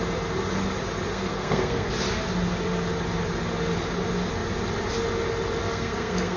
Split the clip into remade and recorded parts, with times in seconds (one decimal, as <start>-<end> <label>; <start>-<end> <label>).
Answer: 0.0-1.1 recorded; 1.1-1.9 remade; 1.9-5.6 recorded; 5.6-6.4 remade